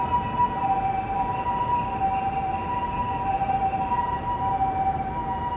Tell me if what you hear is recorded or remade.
recorded